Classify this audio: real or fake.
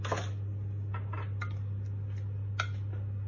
real